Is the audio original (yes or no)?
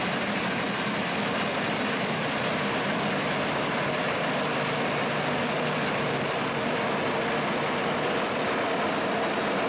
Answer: no